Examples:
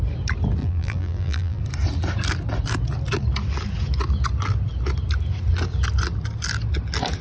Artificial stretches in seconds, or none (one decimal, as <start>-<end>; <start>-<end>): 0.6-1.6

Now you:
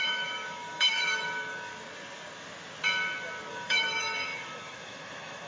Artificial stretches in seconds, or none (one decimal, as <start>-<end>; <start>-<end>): 0.0-1.7; 3.5-5.5

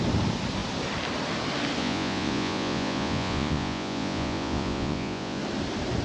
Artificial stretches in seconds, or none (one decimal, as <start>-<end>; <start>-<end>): 1.8-5.4

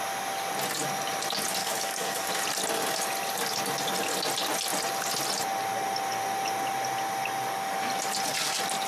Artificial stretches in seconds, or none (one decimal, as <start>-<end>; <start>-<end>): 1.6-2.3

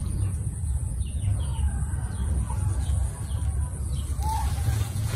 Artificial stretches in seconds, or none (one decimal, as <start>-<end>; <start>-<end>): 0.0-1.5; 4.6-5.2